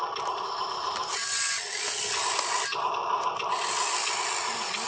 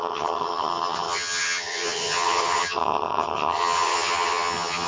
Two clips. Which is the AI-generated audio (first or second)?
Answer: second